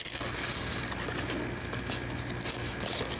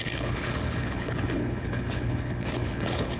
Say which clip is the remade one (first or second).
second